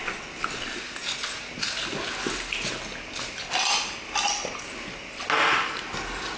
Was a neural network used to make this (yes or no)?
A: no